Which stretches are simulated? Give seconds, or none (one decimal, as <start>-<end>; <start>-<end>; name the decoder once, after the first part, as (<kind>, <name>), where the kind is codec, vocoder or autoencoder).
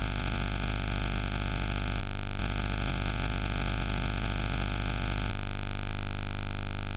0.0-2.0 (vocoder, Vocos); 2.4-5.3